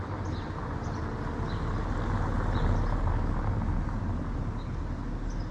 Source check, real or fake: real